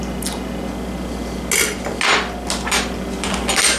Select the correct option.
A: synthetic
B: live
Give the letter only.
B